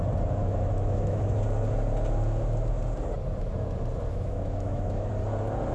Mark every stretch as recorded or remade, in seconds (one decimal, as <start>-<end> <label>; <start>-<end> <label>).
0.0-0.4 recorded; 0.4-1.3 remade; 1.3-4.1 recorded; 4.1-5.1 remade; 5.1-5.7 recorded